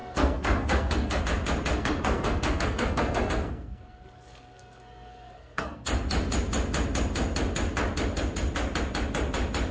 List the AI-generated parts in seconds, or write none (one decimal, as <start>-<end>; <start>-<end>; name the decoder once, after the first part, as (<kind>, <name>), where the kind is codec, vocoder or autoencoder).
0.0-1.2 (codec, SNAC); 1.7-5.9